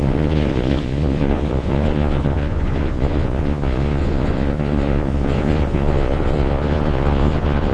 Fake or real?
fake